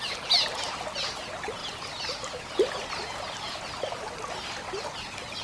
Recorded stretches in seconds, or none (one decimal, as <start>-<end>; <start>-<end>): 0.0-5.4